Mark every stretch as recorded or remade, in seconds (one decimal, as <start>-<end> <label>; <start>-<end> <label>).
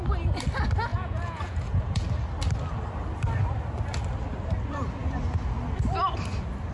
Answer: 0.0-0.9 recorded; 0.9-2.0 remade; 2.0-6.7 recorded